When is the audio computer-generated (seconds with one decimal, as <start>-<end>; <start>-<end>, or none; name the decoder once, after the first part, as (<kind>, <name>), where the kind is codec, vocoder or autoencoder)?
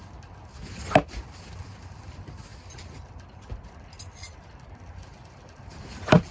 2.5-6.3 (vocoder, BigVGAN v2)